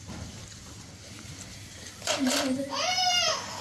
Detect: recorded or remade remade